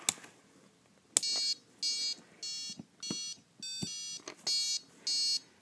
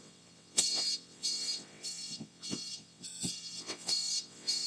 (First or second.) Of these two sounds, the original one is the first